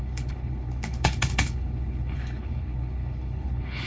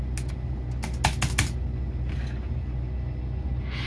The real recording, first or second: second